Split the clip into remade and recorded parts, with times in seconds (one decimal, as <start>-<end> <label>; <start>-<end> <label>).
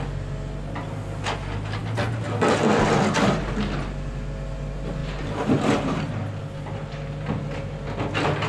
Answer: 0.0-8.5 recorded